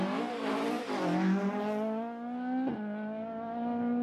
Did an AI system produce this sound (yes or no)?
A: no